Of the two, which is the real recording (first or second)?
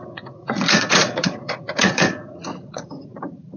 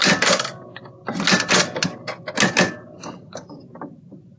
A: second